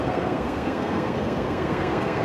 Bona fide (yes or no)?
no